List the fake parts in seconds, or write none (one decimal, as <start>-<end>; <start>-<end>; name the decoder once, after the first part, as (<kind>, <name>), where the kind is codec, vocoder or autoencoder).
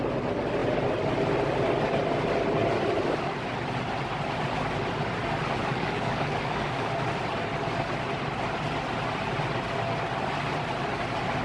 5.6-6.9 (codec, DAC)